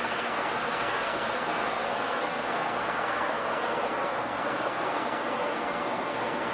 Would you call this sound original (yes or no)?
no